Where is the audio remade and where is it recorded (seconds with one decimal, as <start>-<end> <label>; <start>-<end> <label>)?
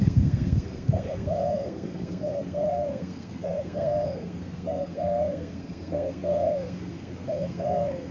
0.0-8.1 remade